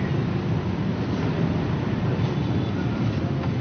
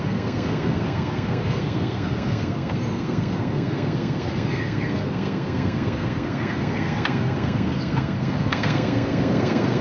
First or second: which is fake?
second